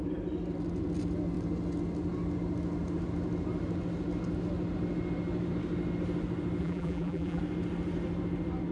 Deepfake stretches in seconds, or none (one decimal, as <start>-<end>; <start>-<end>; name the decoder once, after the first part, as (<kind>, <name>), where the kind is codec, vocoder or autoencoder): 6.6-7.4 (vocoder, BigVGAN v2)

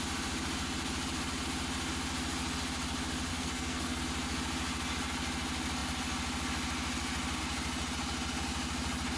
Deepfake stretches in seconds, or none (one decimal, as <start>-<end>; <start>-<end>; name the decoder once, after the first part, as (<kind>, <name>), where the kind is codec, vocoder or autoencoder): 3.3-4.0 (codec, SNAC)

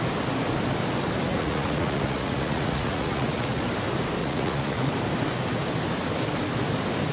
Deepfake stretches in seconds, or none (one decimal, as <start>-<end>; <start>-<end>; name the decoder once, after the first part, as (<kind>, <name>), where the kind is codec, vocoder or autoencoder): 1.3-3.6 (vocoder, Vocos); 4.2-4.9

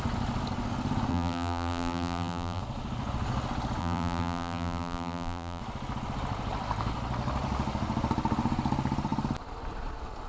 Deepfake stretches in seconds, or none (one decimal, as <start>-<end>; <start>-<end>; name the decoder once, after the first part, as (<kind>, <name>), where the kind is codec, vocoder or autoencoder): 1.1-2.6 (vocoder, BigVGAN v2); 3.8-5.6

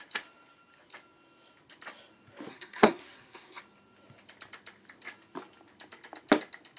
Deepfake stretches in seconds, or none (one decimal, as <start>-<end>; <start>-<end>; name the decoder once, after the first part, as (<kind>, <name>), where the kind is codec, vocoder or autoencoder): 2.5-3.6 (codec, SNAC)